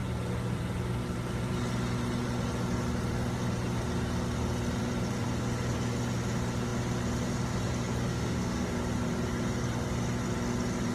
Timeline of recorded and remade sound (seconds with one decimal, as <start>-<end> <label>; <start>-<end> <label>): 0.0-8.1 recorded; 8.1-8.7 remade; 8.7-10.9 recorded

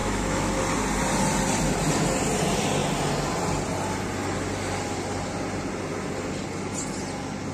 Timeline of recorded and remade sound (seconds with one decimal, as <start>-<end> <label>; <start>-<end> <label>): 0.0-0.5 remade; 0.5-7.5 recorded

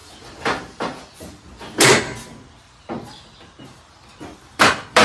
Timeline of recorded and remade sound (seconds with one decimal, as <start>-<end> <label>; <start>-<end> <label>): 0.0-5.0 recorded

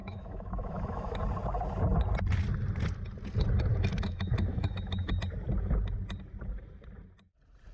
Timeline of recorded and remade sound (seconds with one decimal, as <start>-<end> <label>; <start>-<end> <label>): 0.0-1.2 remade; 1.2-3.7 recorded; 3.7-5.1 remade; 5.1-7.7 recorded

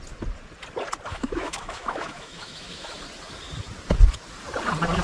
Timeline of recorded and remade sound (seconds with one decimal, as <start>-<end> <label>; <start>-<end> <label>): 0.0-1.1 recorded; 1.1-3.0 remade; 3.0-5.0 recorded

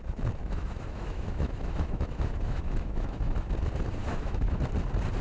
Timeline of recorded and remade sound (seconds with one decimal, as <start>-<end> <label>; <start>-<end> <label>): 0.0-0.4 recorded; 0.4-3.5 remade; 3.5-4.0 recorded; 4.0-4.6 remade; 4.6-5.2 recorded

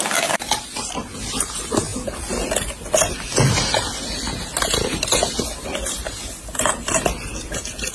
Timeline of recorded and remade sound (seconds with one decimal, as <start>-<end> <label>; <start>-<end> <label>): 0.0-7.9 recorded

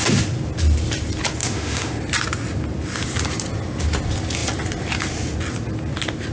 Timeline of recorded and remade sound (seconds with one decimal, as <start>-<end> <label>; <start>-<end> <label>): 0.0-1.4 recorded; 1.4-2.0 remade; 2.0-6.3 recorded